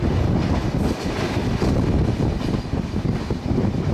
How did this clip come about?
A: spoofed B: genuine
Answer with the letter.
B